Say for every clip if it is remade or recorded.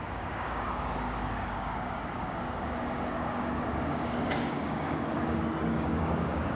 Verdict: remade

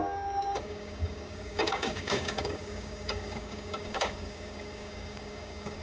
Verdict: remade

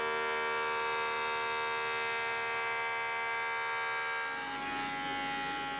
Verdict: recorded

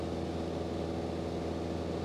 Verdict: recorded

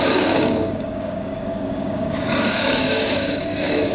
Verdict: remade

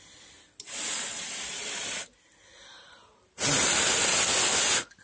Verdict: recorded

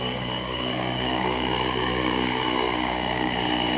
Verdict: remade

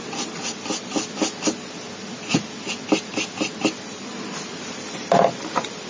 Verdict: recorded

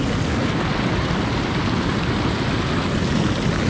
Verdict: recorded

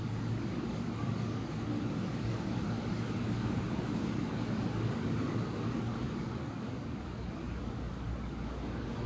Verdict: remade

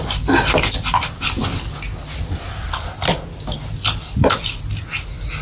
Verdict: recorded